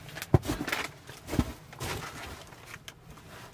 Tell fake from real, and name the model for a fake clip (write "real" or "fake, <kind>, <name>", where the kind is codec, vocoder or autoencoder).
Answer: real